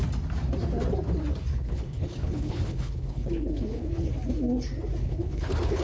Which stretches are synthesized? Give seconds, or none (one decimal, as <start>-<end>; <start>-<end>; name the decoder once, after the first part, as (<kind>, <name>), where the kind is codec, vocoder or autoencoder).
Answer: 1.5-4.1 (codec, HILCodec); 5.0-5.8